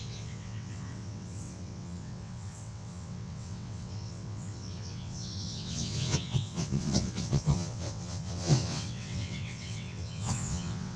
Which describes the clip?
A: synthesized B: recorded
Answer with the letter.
A